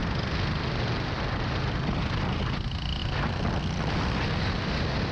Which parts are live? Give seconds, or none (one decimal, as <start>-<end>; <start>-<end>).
0.0-5.1